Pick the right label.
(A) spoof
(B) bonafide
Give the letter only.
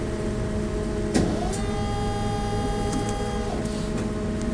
B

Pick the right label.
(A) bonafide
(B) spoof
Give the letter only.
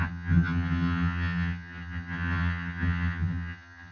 B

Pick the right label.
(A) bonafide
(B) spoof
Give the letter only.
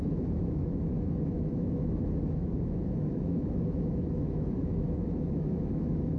B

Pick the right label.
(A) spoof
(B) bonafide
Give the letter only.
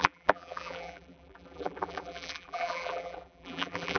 A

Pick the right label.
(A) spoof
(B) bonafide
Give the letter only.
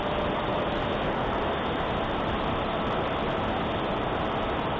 B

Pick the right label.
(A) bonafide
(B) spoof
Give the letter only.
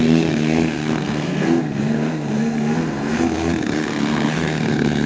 B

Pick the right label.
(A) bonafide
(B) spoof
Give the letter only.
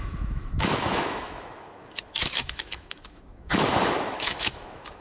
B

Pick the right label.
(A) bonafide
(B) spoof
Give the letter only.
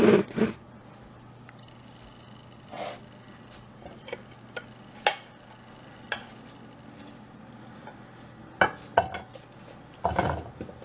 A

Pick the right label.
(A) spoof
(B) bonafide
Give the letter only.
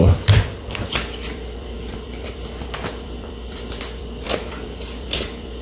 A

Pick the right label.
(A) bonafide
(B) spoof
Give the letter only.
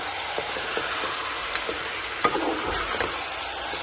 A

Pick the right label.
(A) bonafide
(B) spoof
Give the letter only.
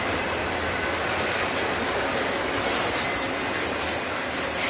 A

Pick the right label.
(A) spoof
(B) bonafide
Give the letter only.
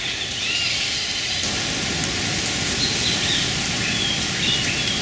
B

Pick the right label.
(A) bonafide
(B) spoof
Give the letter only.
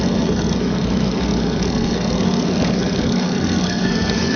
B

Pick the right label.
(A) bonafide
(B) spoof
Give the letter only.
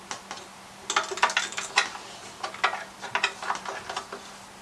A